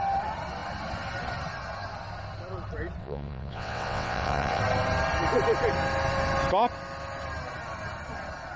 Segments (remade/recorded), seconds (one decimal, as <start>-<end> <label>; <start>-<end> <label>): 0.0-3.0 recorded; 3.0-4.6 remade; 4.6-8.6 recorded